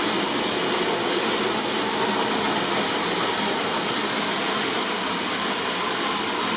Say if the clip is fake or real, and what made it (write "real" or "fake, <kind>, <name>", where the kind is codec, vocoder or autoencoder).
real